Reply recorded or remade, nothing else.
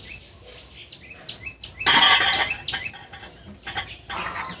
recorded